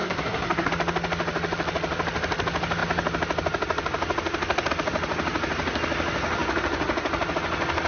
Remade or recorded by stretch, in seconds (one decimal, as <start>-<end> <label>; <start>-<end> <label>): 0.0-0.7 remade; 0.7-7.9 recorded